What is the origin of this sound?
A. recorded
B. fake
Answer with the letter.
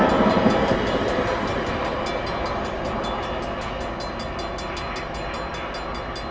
A